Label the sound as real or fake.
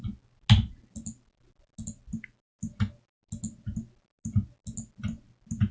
real